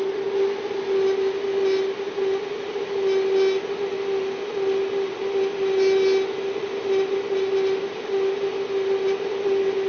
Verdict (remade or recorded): recorded